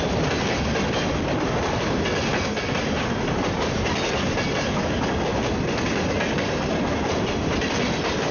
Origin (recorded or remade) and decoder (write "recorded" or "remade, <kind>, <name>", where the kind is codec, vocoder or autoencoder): recorded